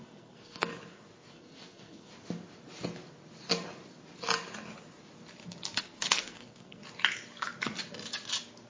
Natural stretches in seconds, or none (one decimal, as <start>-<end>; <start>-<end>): 0.7-1.3; 2.1-5.8; 6.8-8.7